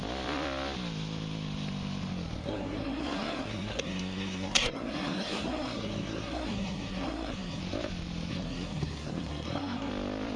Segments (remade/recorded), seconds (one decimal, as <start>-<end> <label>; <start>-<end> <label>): 0.0-2.4 recorded; 2.4-7.6 remade; 7.6-8.3 recorded; 8.3-9.9 remade; 9.9-10.4 recorded